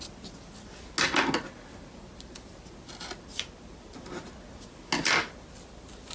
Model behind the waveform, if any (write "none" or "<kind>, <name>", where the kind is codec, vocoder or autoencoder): none